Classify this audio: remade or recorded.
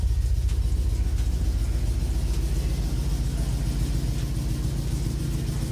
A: recorded